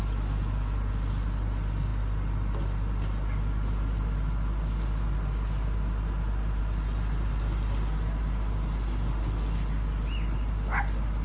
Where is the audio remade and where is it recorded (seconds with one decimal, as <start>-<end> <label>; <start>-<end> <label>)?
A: 0.0-11.2 recorded